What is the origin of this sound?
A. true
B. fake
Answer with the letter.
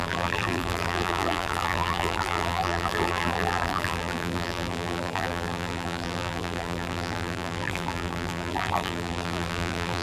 B